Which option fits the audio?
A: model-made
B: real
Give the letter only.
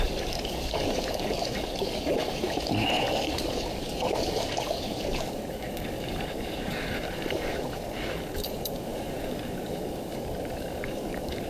A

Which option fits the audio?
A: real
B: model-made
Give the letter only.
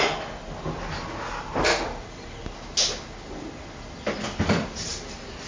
A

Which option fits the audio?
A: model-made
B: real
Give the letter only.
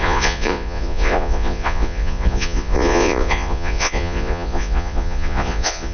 A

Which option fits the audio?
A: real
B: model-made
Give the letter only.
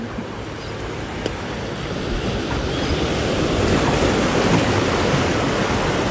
A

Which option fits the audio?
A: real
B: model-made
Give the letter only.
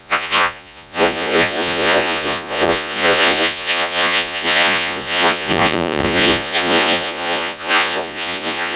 B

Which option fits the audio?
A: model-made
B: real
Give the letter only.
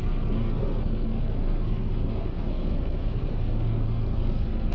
A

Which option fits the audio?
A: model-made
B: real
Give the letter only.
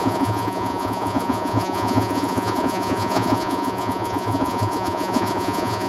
A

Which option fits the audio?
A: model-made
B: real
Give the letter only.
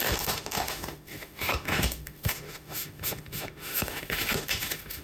A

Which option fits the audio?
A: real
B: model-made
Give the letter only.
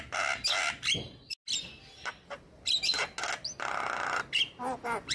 A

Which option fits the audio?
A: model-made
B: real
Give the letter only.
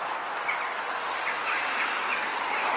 B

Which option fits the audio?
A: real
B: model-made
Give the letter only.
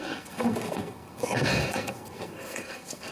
B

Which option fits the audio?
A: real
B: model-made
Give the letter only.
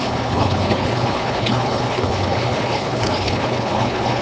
B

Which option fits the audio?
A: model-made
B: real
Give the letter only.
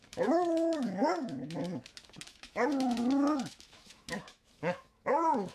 A